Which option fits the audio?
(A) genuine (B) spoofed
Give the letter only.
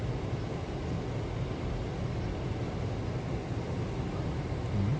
A